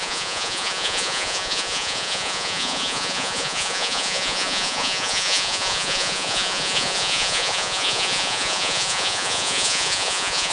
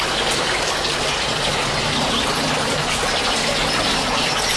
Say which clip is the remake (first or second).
first